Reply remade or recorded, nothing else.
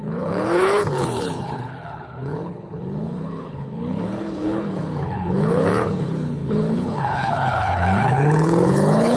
remade